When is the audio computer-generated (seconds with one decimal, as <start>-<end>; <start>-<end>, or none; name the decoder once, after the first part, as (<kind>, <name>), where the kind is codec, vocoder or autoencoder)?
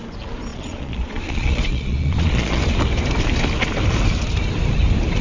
0.5-2.6 (vocoder, Vocos)